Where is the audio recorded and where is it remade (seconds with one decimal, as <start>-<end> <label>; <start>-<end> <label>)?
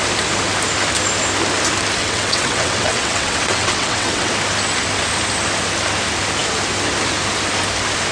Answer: 0.0-2.0 recorded; 2.0-4.3 remade; 4.3-8.1 recorded